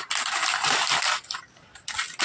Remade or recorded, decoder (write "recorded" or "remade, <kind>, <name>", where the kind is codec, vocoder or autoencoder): recorded